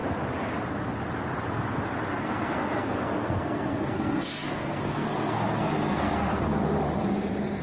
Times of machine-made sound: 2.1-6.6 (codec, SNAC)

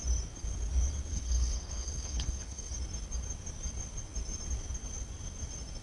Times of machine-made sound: 1.1-2.7 (codec, HILCodec)